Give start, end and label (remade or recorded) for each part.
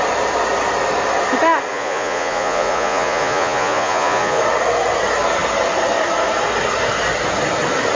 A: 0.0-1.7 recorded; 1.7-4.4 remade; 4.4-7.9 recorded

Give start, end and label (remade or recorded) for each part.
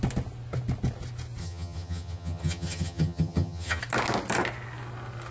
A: 0.0-1.4 recorded; 1.4-3.8 remade; 3.8-5.3 recorded